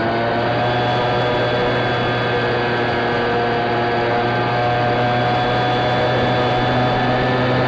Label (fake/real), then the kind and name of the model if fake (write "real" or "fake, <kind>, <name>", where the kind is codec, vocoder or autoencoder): real